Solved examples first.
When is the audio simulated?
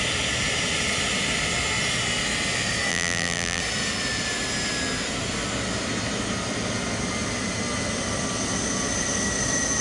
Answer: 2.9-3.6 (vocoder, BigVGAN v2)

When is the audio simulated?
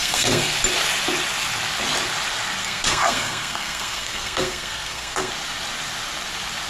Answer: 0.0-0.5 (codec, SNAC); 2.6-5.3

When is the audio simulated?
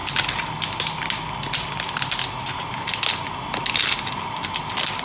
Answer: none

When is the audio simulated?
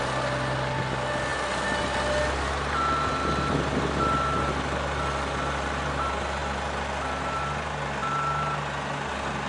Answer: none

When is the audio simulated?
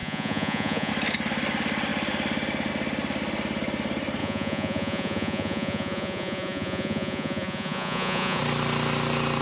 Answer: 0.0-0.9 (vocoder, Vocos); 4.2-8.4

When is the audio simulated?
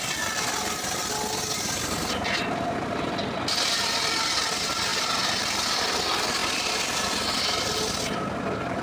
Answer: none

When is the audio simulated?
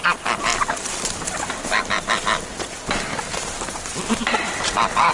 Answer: 3.1-4.2 (vocoder, BigVGAN v2)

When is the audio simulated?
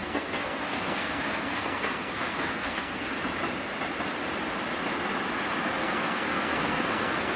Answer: 0.0-3.0 (codec, SNAC); 5.8-7.4